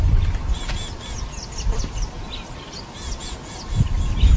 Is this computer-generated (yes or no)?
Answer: no